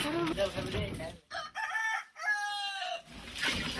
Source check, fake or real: real